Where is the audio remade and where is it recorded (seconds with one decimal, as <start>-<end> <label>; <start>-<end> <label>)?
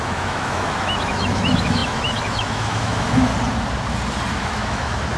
0.0-3.3 remade; 3.3-4.4 recorded; 4.4-5.2 remade